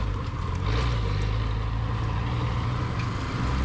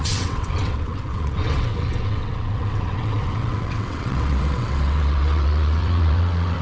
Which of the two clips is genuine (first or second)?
first